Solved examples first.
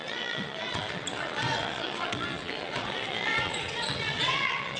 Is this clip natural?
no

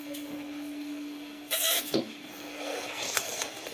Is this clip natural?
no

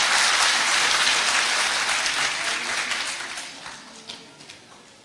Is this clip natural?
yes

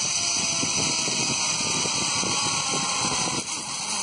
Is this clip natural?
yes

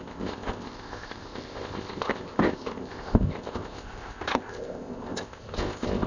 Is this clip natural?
no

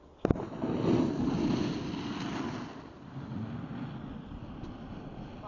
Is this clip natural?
yes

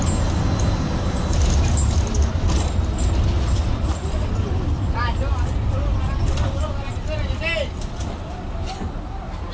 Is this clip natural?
yes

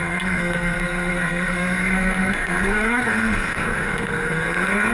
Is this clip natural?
no